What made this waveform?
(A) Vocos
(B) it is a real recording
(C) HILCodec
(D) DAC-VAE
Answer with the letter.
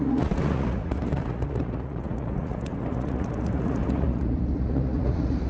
A